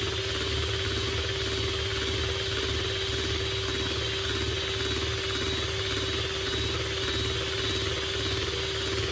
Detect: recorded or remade recorded